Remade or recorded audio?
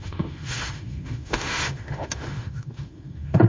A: remade